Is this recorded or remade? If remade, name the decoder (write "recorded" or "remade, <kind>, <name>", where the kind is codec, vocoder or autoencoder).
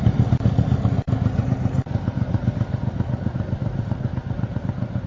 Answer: recorded